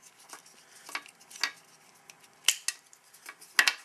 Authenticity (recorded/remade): recorded